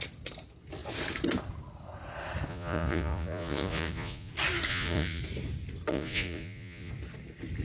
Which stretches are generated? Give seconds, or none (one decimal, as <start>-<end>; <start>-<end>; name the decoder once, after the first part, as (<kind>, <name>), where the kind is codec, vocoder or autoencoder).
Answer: 2.5-4.3 (vocoder, Vocos); 4.7-5.2; 5.9-6.9